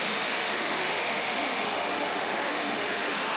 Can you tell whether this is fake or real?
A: fake